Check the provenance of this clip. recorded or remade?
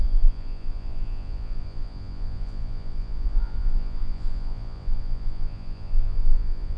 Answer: remade